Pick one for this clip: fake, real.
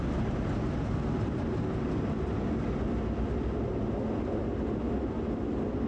real